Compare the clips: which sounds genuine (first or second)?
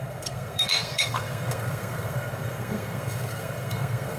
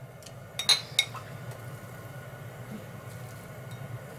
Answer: second